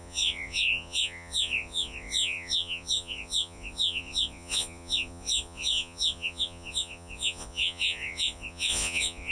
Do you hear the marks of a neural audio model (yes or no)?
yes